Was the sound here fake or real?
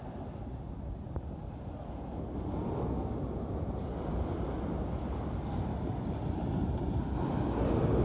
real